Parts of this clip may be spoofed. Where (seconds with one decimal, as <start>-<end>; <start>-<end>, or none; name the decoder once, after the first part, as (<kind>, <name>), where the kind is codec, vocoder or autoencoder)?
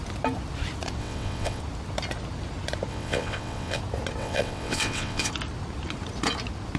1.0-1.6 (vocoder, WaveNeXt); 2.9-3.8; 4.2-5.3